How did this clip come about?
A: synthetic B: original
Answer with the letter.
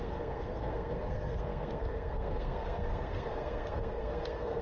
A